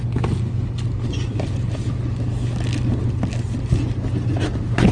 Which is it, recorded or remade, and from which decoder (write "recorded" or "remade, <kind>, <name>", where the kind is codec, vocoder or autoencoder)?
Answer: recorded